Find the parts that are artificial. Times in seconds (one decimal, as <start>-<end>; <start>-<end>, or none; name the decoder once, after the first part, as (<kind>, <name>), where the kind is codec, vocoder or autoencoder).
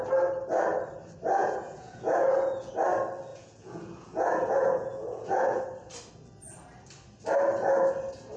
1.4-2.7 (vocoder, Vocos); 3.3-5.6